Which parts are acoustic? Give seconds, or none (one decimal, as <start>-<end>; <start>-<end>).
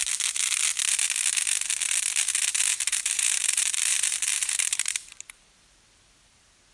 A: 0.0-2.7; 6.0-6.7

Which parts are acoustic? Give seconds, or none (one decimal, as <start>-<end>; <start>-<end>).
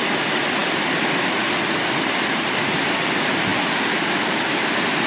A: 0.0-5.1